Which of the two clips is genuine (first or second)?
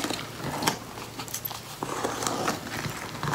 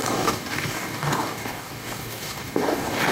first